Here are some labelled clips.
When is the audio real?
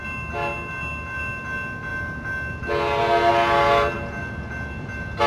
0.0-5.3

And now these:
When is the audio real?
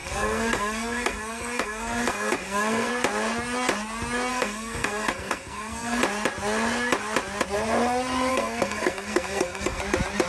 2.9-4.3; 6.0-8.3; 9.8-10.3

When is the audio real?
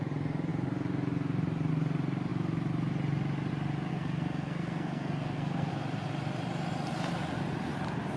0.0-3.9; 5.7-8.2